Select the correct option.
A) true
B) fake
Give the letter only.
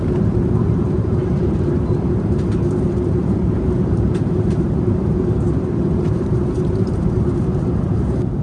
B